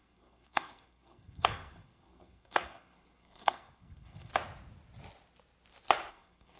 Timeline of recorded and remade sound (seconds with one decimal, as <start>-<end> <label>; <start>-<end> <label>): 0.0-4.3 remade; 4.3-6.1 recorded; 6.1-6.6 remade